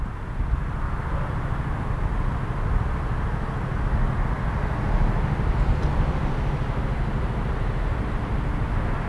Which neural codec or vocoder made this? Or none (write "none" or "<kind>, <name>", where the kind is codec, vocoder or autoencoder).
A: none